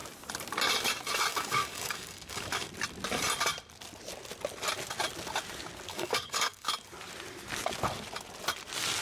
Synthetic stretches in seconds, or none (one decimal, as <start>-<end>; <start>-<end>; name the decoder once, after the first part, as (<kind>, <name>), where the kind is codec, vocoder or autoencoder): 1.3-2.7 (codec, DAC); 5.9-6.7

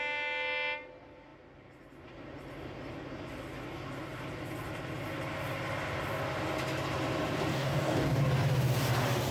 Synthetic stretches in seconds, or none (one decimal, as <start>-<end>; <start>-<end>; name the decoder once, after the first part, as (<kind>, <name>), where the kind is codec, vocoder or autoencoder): 7.5-8.2 (codec, DAC)

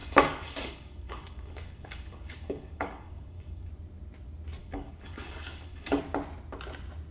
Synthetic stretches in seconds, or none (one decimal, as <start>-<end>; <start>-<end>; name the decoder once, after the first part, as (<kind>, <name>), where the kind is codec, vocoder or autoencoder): 0.0-3.7 (codec, DAC); 4.6-6.0